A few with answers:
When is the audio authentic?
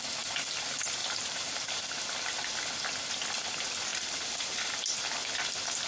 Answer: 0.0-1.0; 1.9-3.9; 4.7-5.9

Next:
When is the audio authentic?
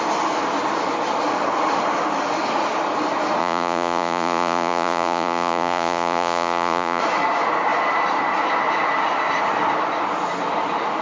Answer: 0.0-3.4; 7.0-11.0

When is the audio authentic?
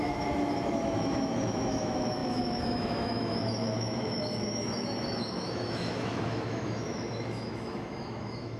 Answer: none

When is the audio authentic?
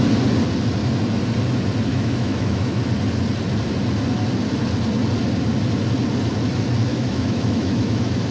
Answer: 0.0-1.9; 2.8-6.9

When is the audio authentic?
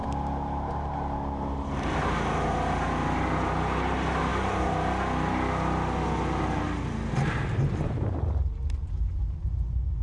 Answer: 0.0-10.0